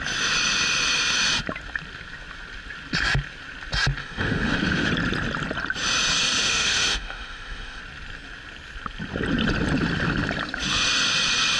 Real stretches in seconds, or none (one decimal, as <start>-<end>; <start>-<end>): 0.0-4.0; 4.9-6.4; 7.8-11.6